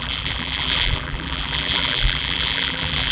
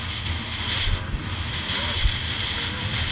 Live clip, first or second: second